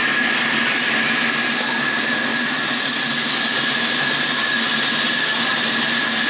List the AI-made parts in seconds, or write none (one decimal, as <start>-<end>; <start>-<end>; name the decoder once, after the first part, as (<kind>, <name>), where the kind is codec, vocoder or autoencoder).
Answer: none